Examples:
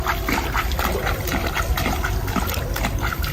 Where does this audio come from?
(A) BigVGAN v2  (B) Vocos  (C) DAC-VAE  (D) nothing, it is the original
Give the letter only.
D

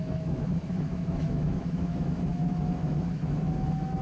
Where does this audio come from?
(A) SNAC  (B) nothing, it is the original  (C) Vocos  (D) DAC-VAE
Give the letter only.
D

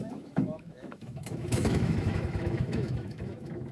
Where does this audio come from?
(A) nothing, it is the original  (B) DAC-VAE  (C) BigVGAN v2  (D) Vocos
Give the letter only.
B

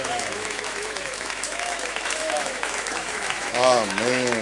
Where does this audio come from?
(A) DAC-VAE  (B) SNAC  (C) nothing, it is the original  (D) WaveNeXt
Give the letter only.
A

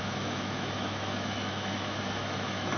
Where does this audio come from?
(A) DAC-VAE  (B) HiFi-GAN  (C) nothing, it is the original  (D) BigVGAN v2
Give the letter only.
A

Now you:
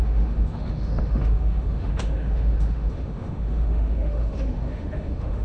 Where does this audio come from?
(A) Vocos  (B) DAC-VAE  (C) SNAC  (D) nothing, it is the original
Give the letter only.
B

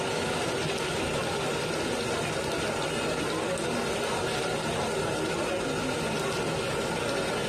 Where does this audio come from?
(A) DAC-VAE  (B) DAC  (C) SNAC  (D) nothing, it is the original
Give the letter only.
D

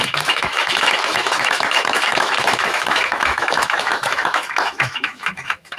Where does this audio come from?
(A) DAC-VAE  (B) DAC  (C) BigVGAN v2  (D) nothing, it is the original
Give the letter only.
A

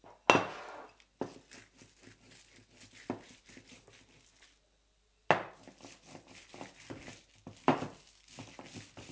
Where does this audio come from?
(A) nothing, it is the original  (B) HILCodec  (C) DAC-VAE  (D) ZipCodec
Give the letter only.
A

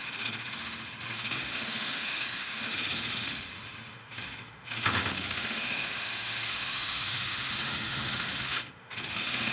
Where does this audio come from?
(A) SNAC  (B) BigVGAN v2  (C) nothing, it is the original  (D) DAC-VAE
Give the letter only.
D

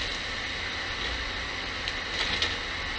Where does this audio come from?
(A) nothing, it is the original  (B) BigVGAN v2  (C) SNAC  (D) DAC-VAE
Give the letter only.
A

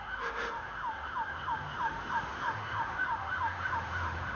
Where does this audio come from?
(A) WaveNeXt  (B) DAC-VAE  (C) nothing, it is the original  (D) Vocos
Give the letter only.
B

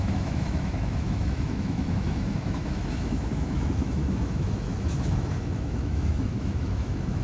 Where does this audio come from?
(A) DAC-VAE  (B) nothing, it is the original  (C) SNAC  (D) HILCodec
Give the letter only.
A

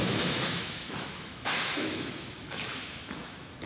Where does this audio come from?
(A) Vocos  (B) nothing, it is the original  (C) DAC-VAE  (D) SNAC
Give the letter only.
C